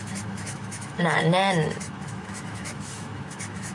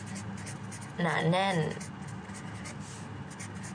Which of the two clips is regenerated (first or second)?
first